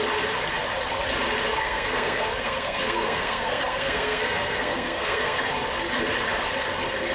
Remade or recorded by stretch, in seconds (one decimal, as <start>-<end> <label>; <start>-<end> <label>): 0.0-1.5 recorded; 1.5-5.5 remade; 5.5-7.1 recorded